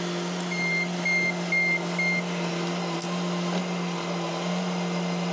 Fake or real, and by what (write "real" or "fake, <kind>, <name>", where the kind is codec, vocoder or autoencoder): real